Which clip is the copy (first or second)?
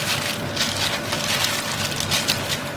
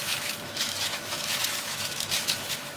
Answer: second